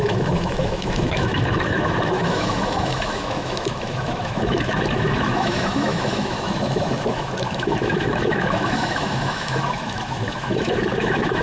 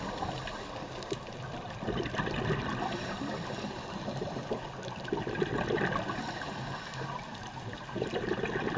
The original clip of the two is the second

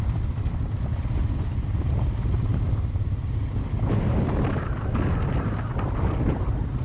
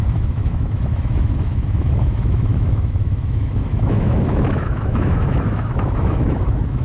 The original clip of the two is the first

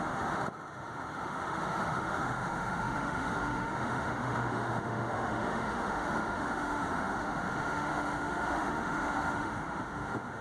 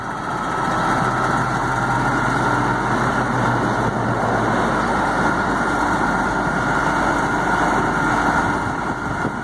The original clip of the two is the second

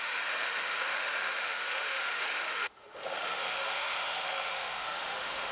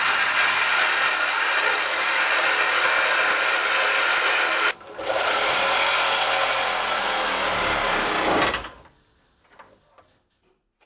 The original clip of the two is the second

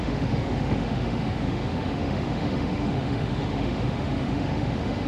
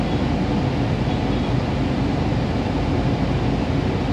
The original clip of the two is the second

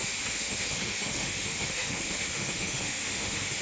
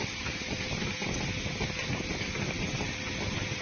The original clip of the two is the second